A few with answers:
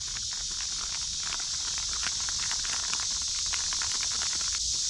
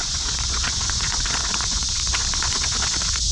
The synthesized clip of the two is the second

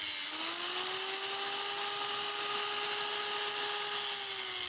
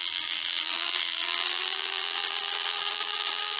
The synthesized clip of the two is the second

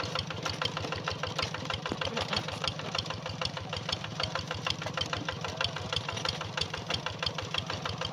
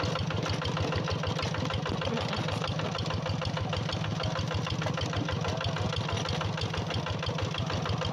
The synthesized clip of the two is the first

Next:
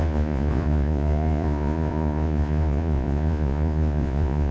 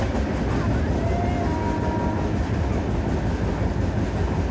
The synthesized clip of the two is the first